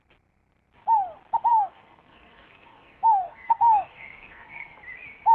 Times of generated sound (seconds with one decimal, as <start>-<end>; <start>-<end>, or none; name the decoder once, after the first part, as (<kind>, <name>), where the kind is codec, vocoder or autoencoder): 1.5-4.7 (codec, SNAC)